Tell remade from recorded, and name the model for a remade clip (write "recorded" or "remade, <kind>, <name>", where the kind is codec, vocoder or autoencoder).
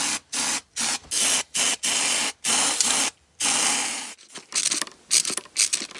recorded